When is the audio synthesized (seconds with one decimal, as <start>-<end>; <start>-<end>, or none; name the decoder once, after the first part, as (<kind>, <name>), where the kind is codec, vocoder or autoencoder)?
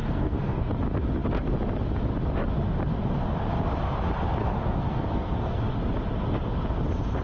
0.0-0.7 (codec, SNAC); 4.4-5.7